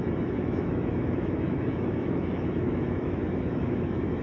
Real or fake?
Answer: fake